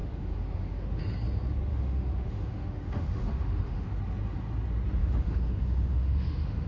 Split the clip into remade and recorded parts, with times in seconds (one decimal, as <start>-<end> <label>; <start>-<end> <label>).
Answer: 0.0-1.0 remade; 1.0-1.7 recorded; 1.7-4.0 remade; 4.0-5.0 recorded; 5.0-6.7 remade